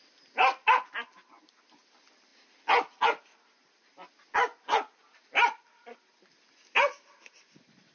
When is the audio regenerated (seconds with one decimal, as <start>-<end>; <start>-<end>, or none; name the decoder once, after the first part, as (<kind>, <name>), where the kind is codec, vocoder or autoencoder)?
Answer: none